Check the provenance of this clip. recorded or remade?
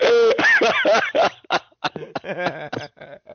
recorded